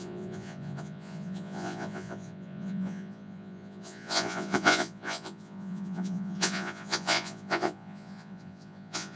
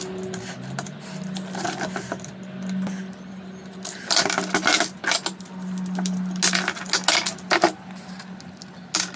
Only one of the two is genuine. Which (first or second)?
second